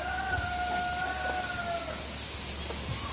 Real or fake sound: real